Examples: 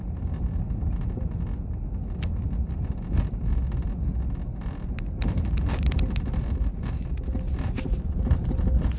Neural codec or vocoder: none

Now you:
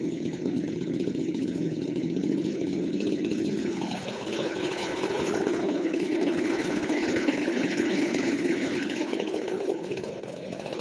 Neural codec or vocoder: codec, HILCodec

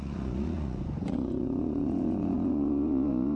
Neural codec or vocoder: vocoder, Vocos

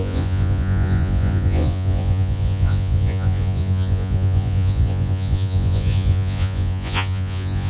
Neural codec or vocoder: vocoder, Vocos